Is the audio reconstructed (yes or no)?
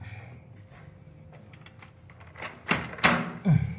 no